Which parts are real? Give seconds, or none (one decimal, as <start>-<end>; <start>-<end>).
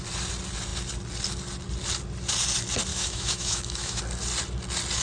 0.0-2.9; 4.0-5.0